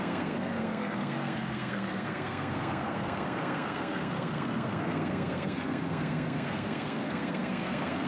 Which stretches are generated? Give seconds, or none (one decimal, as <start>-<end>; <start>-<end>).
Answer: 0.0-8.1